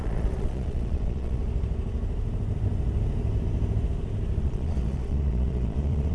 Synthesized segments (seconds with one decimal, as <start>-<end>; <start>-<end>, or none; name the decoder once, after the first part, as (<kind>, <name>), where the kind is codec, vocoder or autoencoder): 0.0-1.4 (vocoder, Vocos); 4.4-6.1